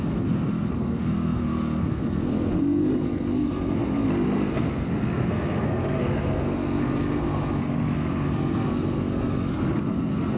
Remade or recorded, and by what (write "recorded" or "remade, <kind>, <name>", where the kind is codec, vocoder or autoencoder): remade, codec, SNAC